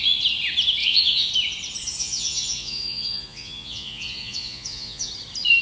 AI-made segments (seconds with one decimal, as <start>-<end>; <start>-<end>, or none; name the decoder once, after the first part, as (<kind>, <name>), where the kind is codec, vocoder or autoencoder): 0.8-1.3 (vocoder, Vocos); 2.0-5.1